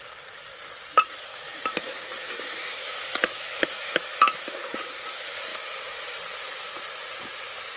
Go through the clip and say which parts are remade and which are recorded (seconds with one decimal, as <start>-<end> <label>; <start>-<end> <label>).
0.0-1.3 recorded; 1.3-4.8 remade; 4.8-5.5 recorded; 5.5-6.2 remade; 6.2-7.8 recorded